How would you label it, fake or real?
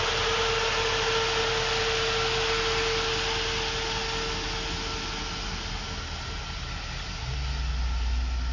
real